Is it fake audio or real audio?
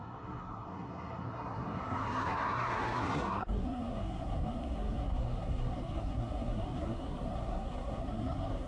fake